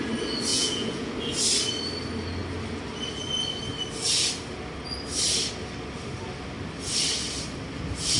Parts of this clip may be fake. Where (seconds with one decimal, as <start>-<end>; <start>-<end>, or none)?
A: 0.5-1.1